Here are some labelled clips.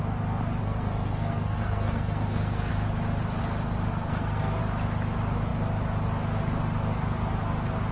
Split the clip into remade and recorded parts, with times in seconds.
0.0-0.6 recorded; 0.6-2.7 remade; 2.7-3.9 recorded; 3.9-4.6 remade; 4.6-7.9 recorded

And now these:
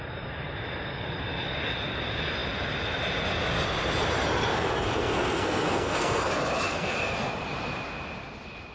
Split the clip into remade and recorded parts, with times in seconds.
0.0-4.5 recorded; 4.5-6.3 remade; 6.3-6.7 recorded; 6.7-7.3 remade; 7.3-8.7 recorded